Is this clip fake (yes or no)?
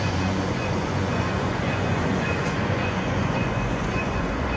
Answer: yes